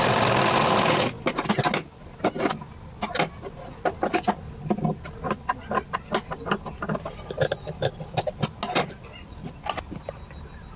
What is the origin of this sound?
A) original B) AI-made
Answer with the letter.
A